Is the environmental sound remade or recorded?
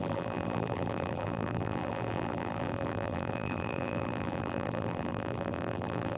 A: remade